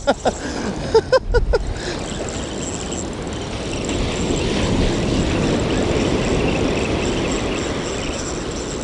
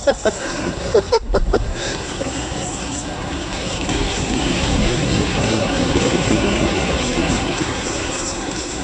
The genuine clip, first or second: first